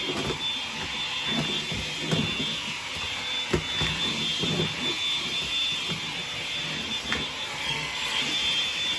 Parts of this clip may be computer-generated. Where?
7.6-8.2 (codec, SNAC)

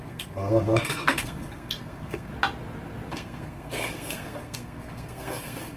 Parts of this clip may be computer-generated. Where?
0.0-2.3 (codec, SNAC); 3.1-5.8

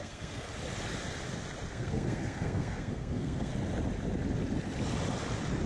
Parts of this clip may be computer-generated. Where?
0.0-0.5 (codec, SNAC); 1.7-3.5

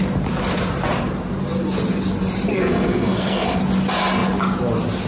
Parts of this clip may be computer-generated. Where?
2.5-3.6 (codec, SNAC)

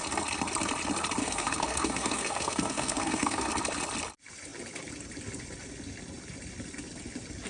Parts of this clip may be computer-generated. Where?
1.2-3.5 (codec, SNAC)